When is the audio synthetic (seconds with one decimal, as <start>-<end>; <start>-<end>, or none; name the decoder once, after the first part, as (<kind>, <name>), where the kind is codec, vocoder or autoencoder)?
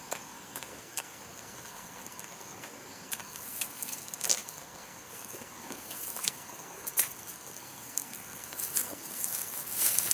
0.0-10.1 (codec, SNAC)